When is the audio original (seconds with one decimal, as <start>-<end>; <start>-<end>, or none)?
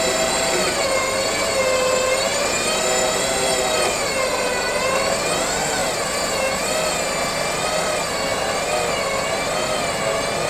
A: 0.0-10.5